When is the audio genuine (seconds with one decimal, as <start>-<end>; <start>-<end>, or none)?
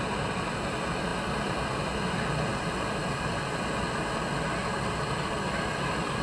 0.0-6.2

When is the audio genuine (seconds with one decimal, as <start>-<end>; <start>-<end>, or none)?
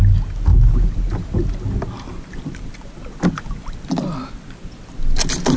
0.0-5.6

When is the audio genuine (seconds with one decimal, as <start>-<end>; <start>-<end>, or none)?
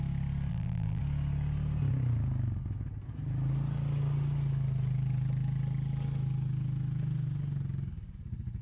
0.0-0.5; 1.0-8.6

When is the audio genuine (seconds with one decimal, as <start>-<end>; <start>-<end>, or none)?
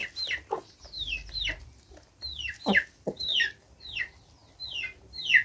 0.0-5.4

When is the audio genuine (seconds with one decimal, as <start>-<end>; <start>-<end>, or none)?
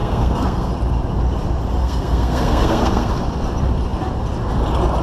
0.7-1.8; 3.1-5.0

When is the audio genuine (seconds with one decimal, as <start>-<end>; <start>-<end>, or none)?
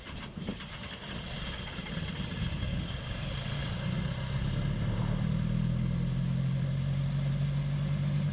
0.0-8.3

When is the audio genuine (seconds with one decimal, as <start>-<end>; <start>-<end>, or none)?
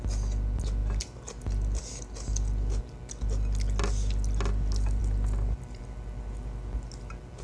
0.0-7.4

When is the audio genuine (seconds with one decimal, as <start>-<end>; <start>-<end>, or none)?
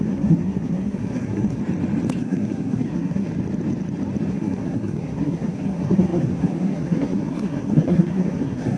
1.6-2.2; 3.3-4.3